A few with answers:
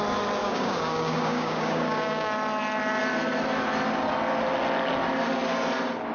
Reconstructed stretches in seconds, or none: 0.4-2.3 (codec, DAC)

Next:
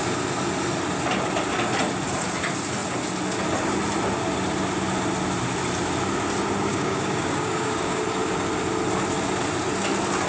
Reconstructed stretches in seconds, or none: 6.7-8.0 (codec, DAC)

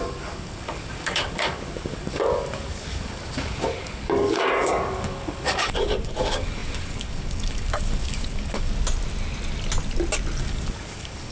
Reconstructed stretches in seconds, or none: 0.0-8.7 (codec, DAC); 10.4-11.3

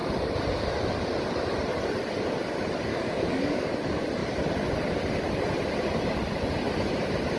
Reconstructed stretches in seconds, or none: 2.9-3.7 (codec, DAC)

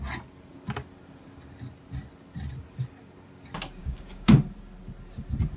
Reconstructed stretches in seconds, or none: 3.8-4.3 (codec, DAC)

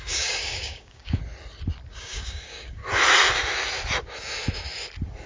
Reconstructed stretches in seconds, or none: 0.0-1.2 (codec, DAC); 1.9-2.8